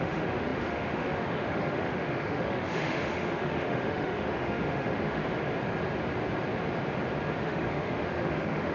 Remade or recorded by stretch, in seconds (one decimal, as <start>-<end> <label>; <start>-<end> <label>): 0.0-5.2 remade; 5.2-7.4 recorded; 7.4-8.7 remade